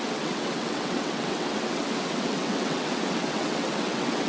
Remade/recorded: remade